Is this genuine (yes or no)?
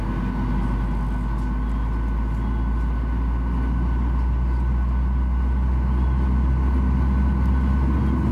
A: yes